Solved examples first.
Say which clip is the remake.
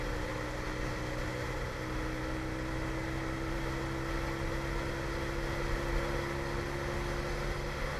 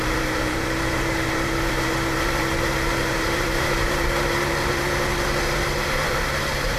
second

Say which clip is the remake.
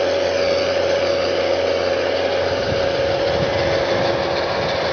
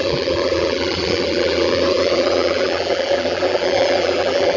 second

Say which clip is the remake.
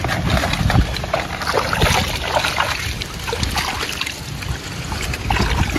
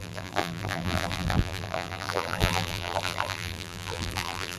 second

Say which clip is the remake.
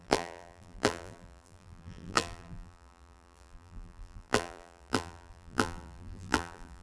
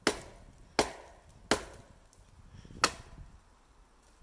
first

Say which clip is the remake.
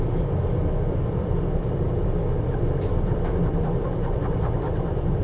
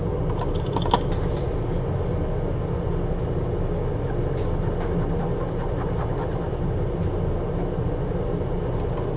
first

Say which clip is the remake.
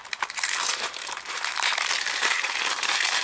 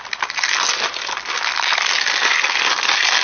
first